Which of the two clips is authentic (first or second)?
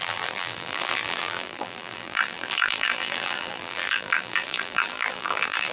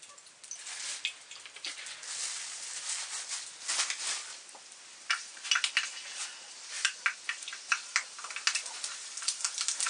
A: second